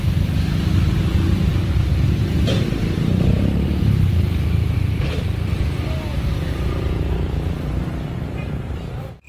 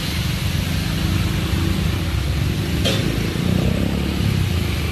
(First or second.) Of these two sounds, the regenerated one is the first